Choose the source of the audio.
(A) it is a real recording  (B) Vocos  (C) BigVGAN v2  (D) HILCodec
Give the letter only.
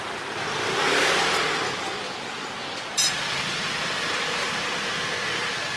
A